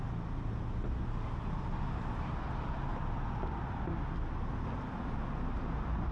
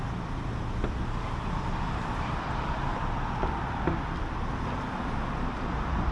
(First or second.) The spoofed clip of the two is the second